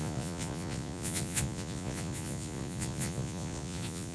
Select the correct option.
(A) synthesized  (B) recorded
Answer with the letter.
A